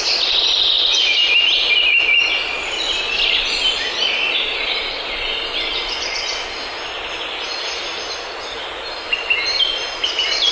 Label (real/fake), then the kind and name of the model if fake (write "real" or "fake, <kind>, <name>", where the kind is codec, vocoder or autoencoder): real